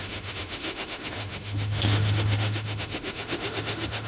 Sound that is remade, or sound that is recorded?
remade